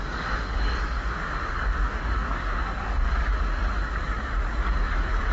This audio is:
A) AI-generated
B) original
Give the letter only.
A